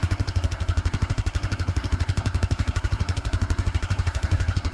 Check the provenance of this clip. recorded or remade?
remade